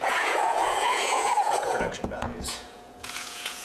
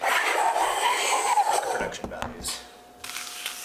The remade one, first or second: first